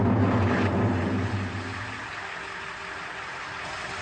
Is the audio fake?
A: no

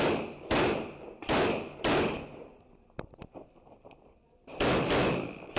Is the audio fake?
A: yes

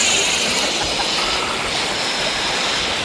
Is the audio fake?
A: no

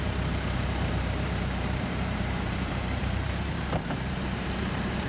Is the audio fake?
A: yes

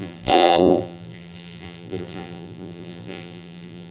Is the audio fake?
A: yes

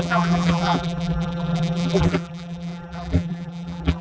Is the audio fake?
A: yes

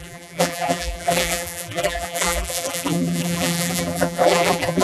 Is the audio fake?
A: yes